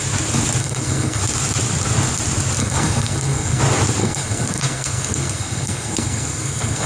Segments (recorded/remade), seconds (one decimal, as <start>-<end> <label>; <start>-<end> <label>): 0.0-0.6 recorded; 0.6-1.2 remade; 1.2-2.6 recorded; 2.6-3.6 remade; 3.6-4.0 recorded; 4.0-6.9 remade